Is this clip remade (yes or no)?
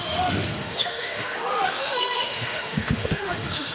yes